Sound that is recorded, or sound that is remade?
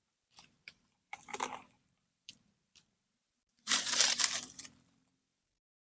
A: remade